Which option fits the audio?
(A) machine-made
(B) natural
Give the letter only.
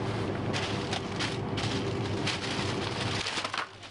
B